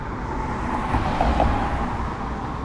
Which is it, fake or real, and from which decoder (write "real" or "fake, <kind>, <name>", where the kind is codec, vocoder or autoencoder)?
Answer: real